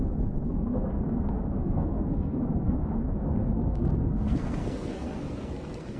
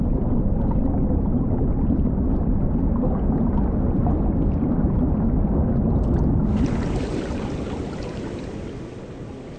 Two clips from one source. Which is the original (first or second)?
second